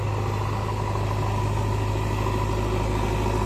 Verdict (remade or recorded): recorded